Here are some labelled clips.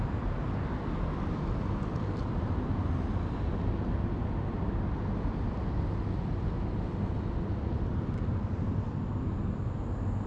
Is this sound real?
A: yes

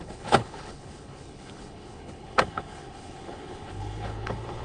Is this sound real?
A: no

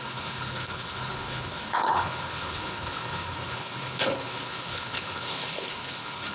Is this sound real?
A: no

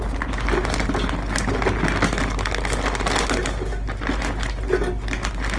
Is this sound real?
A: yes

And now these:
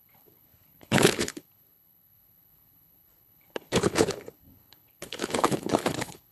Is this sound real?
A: no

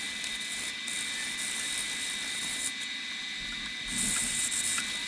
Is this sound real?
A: yes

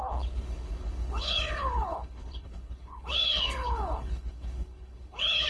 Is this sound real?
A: no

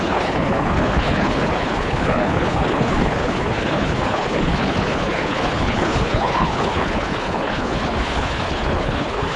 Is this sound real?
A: no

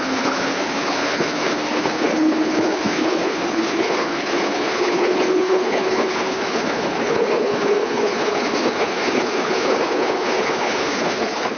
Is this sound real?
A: no